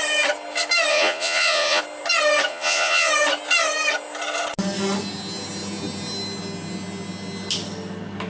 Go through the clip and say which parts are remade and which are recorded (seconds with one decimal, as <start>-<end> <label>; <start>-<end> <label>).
0.0-0.9 recorded; 0.9-1.8 remade; 1.8-2.5 recorded; 2.5-3.1 remade; 3.1-8.3 recorded